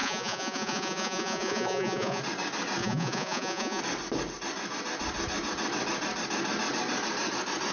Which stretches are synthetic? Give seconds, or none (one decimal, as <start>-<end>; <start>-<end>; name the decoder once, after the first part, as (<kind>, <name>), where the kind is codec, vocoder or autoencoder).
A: 0.0-2.2 (vocoder, Vocos); 2.8-3.8

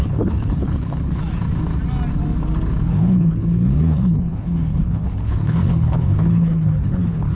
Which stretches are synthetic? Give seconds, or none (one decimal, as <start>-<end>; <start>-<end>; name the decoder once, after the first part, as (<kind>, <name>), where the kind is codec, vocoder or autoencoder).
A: 0.0-1.2 (codec, HILCodec); 2.8-7.3

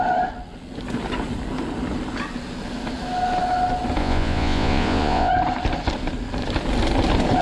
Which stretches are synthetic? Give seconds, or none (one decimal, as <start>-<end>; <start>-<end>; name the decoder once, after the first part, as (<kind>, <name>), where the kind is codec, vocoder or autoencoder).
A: 4.0-5.3 (vocoder, Vocos)